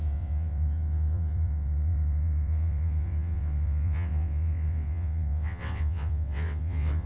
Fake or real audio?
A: fake